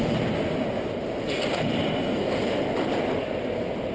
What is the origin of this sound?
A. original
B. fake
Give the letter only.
A